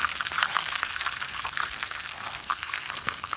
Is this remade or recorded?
remade